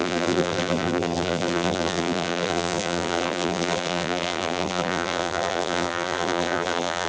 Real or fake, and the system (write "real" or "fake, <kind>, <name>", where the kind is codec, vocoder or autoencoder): fake, vocoder, BigVGAN v2